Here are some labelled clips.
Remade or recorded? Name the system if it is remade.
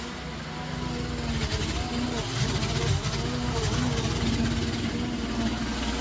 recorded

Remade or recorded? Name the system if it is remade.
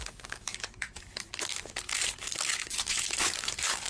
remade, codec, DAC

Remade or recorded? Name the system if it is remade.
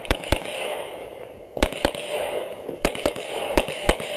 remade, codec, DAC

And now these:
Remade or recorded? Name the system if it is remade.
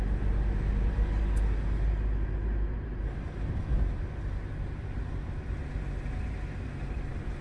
recorded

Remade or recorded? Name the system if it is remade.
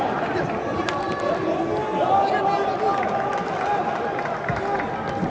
recorded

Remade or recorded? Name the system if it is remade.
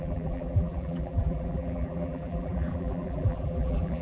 remade, vocoder, BigVGAN v2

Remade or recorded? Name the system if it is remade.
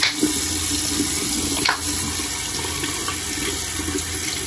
recorded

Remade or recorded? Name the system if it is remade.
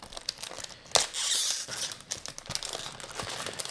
recorded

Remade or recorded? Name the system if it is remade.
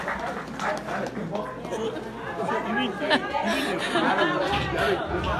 recorded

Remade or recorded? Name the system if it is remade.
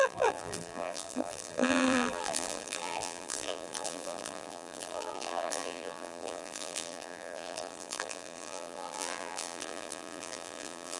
remade, vocoder, BigVGAN v2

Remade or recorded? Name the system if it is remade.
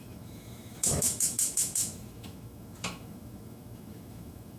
remade, autoencoder, DAC-VAE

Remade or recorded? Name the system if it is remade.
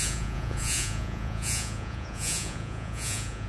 remade, vocoder, Vocos